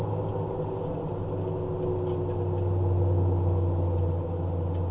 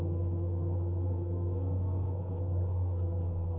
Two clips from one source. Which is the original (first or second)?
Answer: first